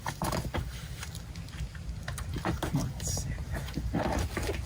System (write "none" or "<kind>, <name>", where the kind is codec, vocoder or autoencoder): none